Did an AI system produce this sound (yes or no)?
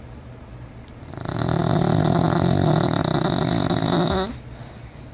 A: no